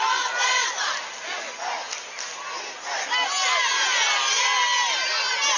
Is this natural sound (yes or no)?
yes